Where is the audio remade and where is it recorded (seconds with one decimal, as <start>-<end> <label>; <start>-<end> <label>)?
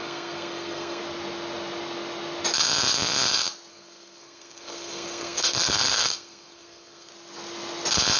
0.0-1.0 remade; 1.0-3.7 recorded; 3.7-7.1 remade; 7.1-8.2 recorded